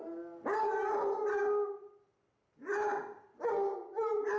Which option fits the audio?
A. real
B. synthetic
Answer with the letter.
A